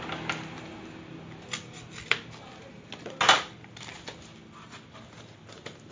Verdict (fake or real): real